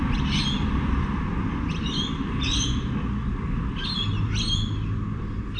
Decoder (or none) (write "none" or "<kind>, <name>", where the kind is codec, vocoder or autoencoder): none